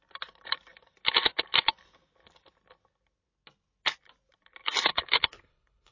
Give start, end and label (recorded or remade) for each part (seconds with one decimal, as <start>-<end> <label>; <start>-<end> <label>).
0.0-4.9 recorded; 4.9-5.9 remade